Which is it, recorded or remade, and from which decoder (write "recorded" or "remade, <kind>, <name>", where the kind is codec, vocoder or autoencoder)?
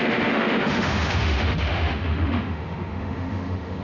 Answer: remade, autoencoder, DAC-VAE